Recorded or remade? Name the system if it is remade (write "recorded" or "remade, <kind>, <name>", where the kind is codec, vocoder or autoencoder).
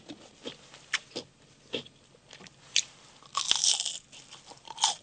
recorded